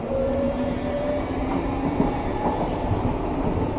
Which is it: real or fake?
fake